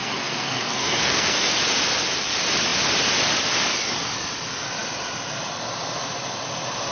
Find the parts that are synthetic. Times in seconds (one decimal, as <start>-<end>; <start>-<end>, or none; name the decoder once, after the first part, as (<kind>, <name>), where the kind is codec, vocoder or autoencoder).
0.0-1.6 (codec, SNAC)